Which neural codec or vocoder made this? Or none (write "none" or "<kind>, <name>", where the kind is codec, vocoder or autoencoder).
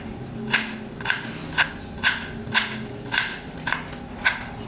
none